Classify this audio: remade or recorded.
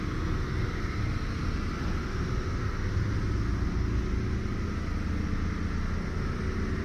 recorded